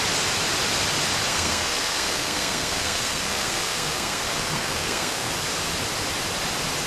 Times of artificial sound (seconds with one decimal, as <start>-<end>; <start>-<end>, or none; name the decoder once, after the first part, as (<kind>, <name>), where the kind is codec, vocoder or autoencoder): 1.3-5.3 (codec, SNAC)